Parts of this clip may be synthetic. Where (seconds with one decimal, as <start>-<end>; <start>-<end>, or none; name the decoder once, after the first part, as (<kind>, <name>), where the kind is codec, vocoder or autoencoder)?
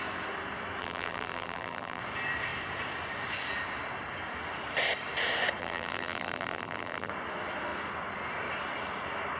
0.8-2.0 (vocoder, BigVGAN v2); 5.6-7.1